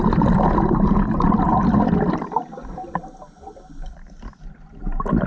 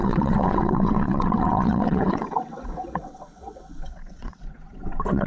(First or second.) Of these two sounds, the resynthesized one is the second